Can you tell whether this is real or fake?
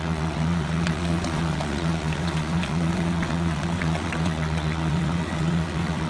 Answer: fake